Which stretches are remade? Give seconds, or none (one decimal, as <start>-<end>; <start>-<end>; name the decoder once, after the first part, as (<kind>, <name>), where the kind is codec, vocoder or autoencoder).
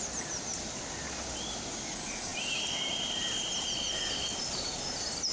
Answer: none